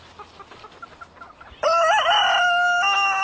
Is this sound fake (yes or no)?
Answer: no